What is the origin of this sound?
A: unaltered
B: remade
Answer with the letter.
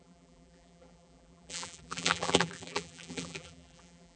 B